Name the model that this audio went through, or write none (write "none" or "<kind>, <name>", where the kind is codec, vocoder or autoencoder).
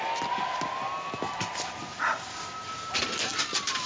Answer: none